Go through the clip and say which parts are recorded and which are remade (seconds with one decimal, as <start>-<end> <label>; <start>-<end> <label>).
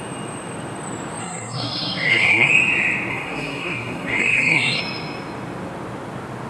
0.0-1.2 recorded; 1.2-2.5 remade; 2.5-3.1 recorded; 3.1-4.8 remade; 4.8-6.5 recorded